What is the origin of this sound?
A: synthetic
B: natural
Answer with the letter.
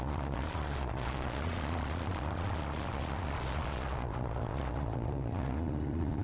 A